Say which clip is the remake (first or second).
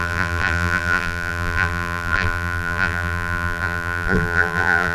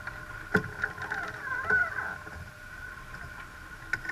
first